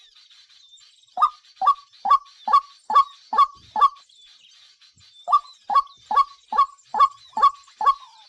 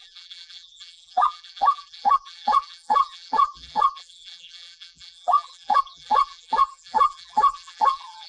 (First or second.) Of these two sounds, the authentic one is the first